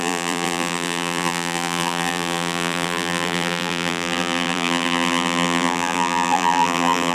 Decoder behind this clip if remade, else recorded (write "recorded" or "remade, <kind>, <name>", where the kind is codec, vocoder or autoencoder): remade, vocoder, BigVGAN v2